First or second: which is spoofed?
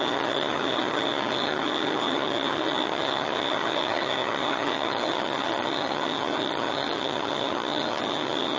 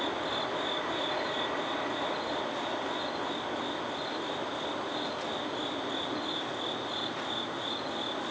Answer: first